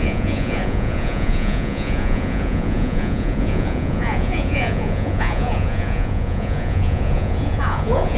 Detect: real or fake fake